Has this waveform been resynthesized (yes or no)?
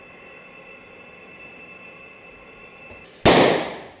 no